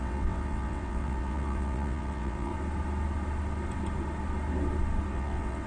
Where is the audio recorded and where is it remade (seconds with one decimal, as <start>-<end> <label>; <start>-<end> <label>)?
0.0-2.5 remade; 2.5-5.1 recorded; 5.1-5.7 remade